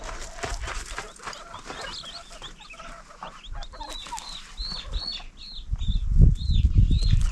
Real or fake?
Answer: real